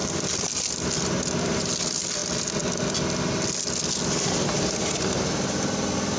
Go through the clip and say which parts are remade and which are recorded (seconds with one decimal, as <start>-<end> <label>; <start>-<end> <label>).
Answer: 0.0-6.2 recorded